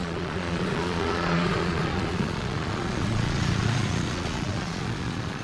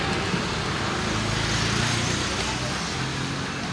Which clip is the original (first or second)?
second